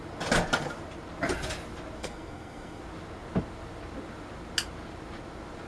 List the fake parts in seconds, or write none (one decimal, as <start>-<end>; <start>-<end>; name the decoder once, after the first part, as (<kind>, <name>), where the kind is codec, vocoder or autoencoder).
2.0-2.8 (codec, SNAC)